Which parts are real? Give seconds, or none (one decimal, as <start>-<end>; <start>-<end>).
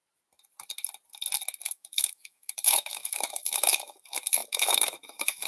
0.0-1.6